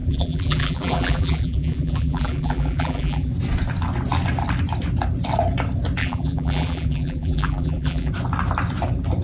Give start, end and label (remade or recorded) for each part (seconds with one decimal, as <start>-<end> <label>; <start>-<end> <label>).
0.0-3.3 remade; 3.3-6.0 recorded; 6.0-8.1 remade; 8.1-9.2 recorded